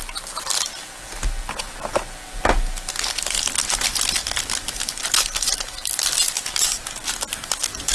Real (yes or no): yes